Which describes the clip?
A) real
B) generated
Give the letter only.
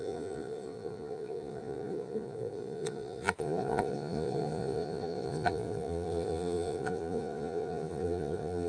B